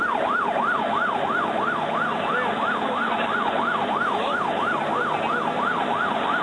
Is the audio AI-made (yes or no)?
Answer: no